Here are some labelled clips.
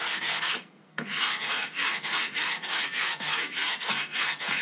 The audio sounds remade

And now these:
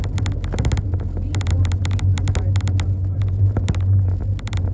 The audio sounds recorded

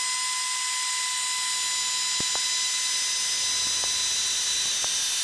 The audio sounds recorded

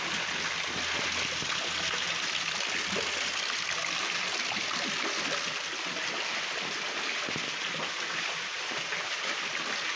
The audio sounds recorded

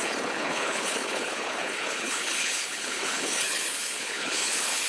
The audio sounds remade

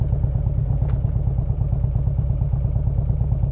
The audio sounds remade